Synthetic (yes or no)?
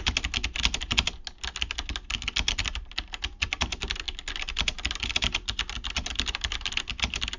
no